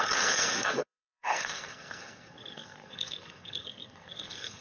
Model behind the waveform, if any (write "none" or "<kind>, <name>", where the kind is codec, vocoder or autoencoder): codec, SNAC